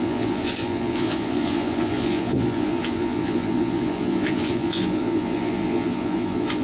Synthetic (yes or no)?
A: yes